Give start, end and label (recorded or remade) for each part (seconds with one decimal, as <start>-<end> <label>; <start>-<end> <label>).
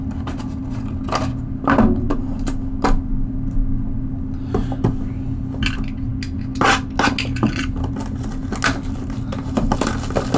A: 0.0-10.4 recorded